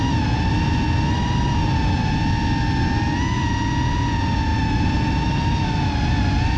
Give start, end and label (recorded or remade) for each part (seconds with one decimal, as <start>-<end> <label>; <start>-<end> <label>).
0.0-6.6 recorded